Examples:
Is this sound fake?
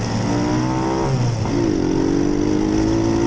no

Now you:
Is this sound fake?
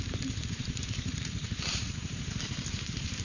yes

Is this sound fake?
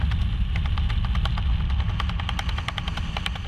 no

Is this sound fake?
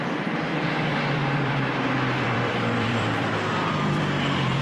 yes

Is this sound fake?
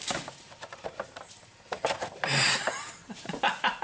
yes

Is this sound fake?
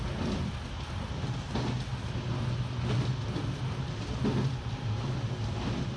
no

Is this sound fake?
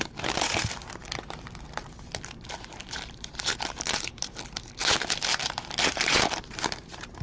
yes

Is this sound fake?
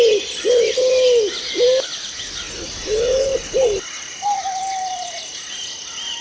no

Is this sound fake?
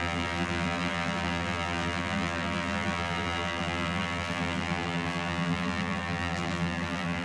yes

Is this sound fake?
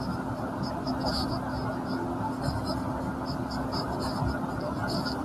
no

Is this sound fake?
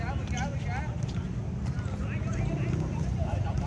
no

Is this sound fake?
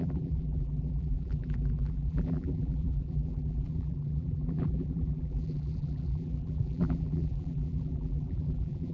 yes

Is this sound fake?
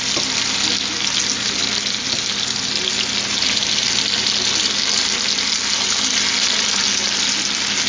no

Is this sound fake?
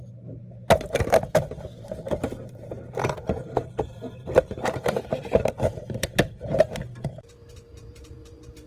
yes